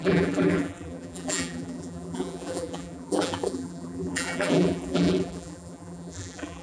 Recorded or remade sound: remade